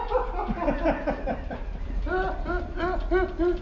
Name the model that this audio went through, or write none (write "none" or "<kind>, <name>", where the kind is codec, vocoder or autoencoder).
none